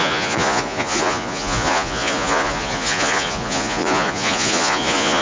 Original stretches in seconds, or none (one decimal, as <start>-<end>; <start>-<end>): none